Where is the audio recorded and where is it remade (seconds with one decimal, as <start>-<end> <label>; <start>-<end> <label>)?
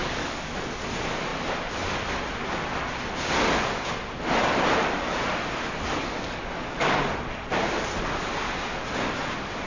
0.0-0.5 remade; 0.5-6.0 recorded; 6.0-7.0 remade; 7.0-9.7 recorded